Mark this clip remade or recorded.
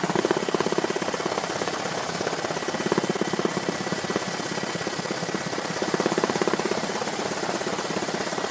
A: recorded